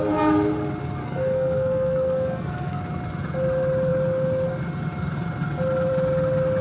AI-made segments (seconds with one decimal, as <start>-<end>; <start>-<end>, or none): 1.0-2.8